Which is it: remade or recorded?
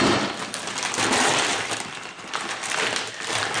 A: remade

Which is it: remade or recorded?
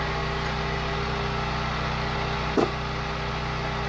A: recorded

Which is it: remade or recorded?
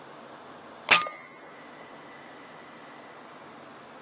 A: recorded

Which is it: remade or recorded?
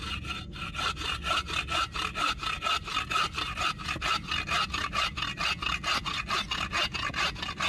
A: recorded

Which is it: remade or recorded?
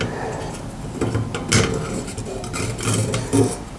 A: recorded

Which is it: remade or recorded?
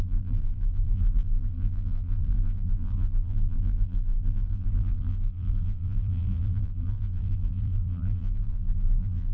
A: remade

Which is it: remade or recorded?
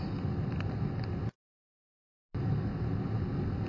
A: recorded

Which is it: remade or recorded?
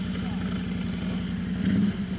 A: recorded